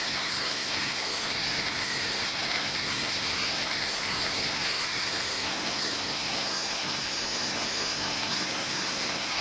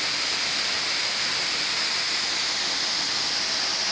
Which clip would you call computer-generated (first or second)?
first